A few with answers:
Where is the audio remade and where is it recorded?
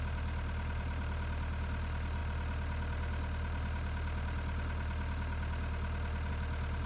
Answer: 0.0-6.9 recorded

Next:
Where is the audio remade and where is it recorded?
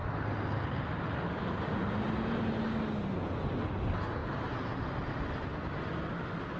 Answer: 0.0-6.6 recorded